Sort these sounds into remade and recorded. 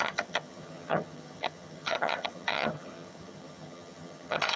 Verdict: remade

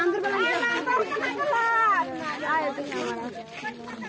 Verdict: recorded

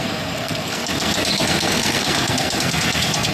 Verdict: remade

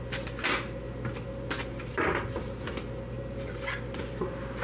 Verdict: recorded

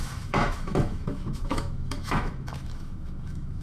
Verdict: remade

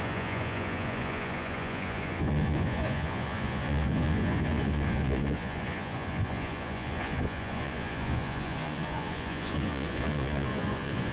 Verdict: remade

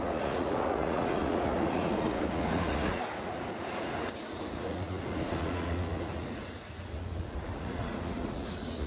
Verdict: remade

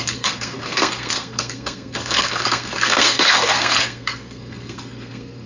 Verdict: remade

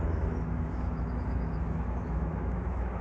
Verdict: remade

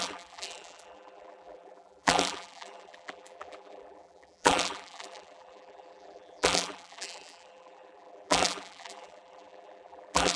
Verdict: remade